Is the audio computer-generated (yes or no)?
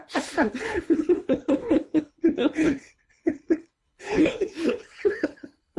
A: yes